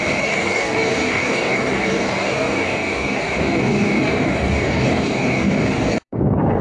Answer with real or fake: fake